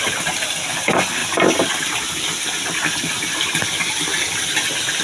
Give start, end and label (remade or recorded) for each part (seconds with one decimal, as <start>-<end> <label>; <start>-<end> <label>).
0.0-5.0 recorded